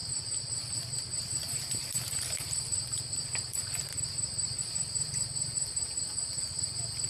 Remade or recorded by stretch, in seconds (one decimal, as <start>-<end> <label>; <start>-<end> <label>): 0.0-1.2 recorded; 1.2-3.9 remade; 3.9-4.6 recorded; 4.6-7.1 remade